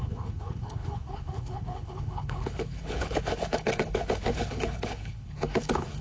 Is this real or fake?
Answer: fake